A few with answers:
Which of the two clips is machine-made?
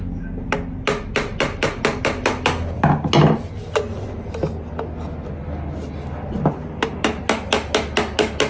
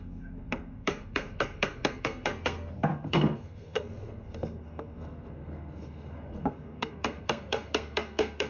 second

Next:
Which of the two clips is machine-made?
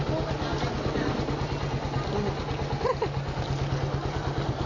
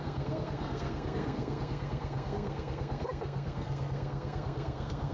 second